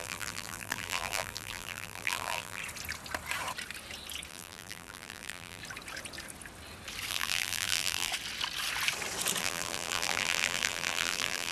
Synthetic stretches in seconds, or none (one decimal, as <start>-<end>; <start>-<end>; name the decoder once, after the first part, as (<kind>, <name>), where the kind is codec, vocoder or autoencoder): 0.0-2.6 (vocoder, BigVGAN v2); 4.3-5.6; 7.1-8.1; 9.4-11.5